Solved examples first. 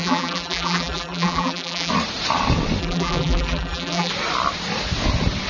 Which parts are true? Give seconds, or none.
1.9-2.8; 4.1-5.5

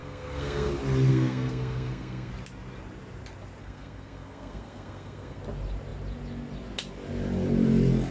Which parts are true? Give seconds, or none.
0.7-1.1; 2.3-3.6; 5.4-8.1

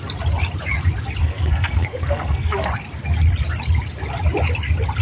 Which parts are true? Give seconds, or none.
0.0-1.2; 2.7-5.0